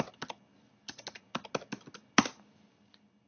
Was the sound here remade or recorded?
recorded